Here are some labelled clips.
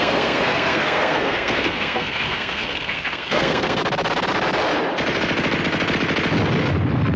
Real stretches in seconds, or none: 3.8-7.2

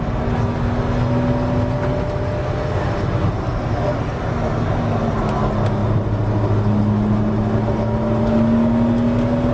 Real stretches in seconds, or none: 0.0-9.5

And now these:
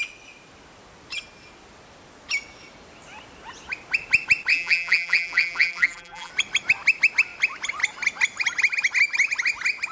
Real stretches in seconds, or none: 0.0-4.5; 6.3-9.9

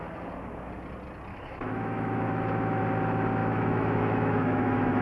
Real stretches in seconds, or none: 0.0-1.3; 2.8-3.4

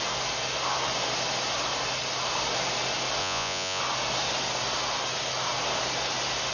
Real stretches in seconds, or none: 0.0-3.2; 3.8-6.5

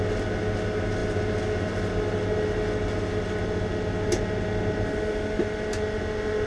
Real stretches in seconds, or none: 0.0-6.5